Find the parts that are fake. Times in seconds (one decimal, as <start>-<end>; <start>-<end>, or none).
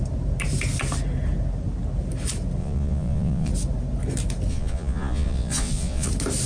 2.6-3.5; 4.5-6.1